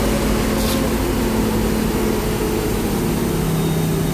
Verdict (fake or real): real